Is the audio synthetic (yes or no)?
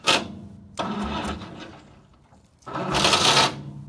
no